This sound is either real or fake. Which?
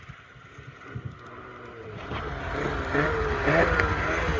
real